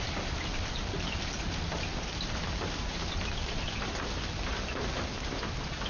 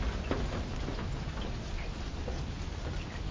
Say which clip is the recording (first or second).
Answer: second